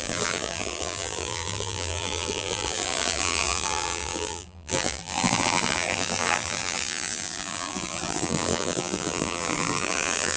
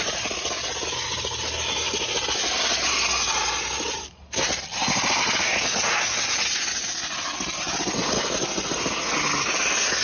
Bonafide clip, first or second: second